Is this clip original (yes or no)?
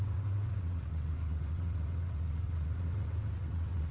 no